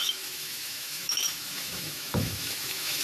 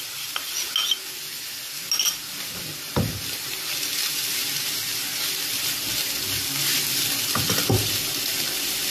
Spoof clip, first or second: first